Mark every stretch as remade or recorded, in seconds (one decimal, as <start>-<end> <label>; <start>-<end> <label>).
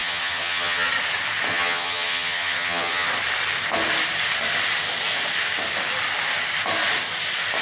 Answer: 0.0-0.9 remade; 0.9-1.5 recorded; 1.5-3.1 remade; 3.1-7.6 recorded